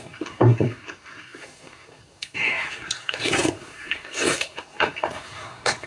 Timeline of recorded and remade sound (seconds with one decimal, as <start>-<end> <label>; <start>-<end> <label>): 0.0-5.9 remade